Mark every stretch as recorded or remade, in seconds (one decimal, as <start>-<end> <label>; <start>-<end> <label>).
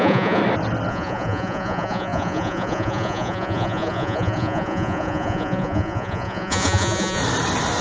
0.0-0.4 remade; 0.4-0.9 recorded; 0.9-7.2 remade; 7.2-7.8 recorded